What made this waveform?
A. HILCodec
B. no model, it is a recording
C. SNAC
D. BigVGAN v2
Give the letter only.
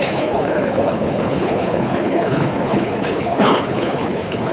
A